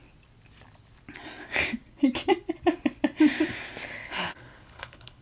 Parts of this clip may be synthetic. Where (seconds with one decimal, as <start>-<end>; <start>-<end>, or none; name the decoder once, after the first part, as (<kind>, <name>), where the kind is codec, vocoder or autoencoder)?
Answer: 4.0-5.2 (codec, HILCodec)